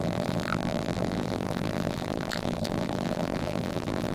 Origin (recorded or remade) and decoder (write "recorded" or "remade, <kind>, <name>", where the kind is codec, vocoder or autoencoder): remade, vocoder, BigVGAN v2